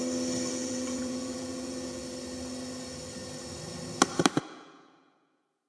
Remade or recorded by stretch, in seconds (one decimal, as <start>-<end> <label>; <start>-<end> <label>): 0.0-0.5 recorded; 0.5-2.0 remade; 2.0-4.4 recorded; 4.4-5.7 remade